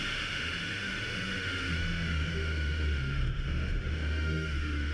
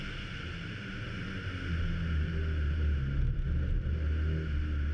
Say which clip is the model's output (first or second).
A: first